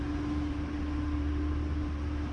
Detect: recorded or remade recorded